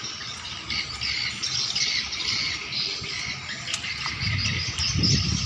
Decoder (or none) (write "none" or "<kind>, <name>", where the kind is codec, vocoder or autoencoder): none